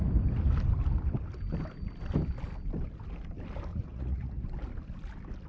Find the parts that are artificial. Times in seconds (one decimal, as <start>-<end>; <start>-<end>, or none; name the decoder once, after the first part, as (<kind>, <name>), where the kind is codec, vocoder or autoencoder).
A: 3.7-4.4 (vocoder, Vocos)